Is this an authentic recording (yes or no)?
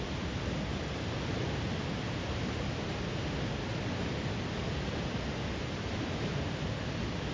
yes